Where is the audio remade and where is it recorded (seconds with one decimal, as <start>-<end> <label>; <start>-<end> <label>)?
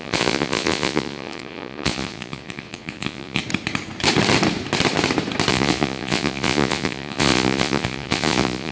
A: 0.0-3.4 remade; 3.4-5.5 recorded; 5.5-8.7 remade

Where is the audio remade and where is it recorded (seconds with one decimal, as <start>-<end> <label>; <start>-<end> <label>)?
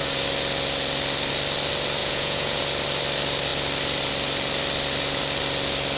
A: 0.0-2.0 recorded; 2.0-2.6 remade; 2.6-6.0 recorded